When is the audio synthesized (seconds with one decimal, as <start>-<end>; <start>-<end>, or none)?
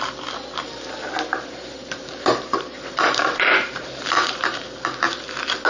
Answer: 1.3-4.7